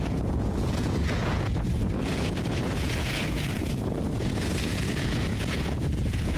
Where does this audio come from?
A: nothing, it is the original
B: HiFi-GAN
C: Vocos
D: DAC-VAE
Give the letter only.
C